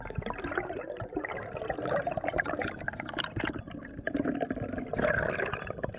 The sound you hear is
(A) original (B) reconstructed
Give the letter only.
A